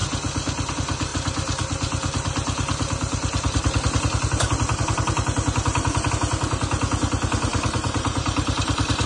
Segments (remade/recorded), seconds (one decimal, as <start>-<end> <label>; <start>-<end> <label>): 0.0-7.5 recorded; 7.5-9.1 remade